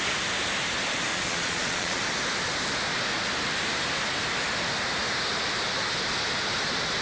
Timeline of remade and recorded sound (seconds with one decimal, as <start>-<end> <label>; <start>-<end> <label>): 0.0-1.1 recorded; 1.1-2.0 remade; 2.0-7.0 recorded

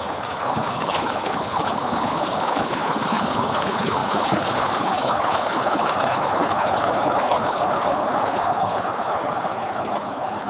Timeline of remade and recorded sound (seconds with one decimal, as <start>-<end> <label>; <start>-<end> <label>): 0.0-10.5 remade

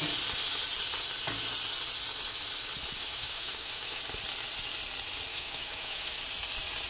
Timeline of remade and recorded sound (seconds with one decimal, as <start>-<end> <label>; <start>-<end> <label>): 0.0-3.0 recorded; 3.0-4.0 remade; 4.0-5.3 recorded; 5.3-6.2 remade; 6.2-6.9 recorded

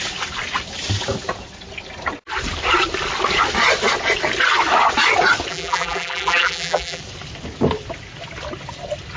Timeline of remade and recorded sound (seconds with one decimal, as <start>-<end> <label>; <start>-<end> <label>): 0.0-5.5 recorded; 5.5-7.0 remade; 7.0-9.2 recorded

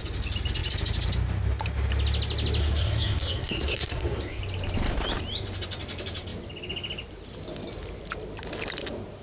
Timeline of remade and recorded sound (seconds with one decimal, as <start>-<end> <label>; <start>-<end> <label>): 0.0-2.6 recorded; 2.6-4.4 remade; 4.4-9.2 recorded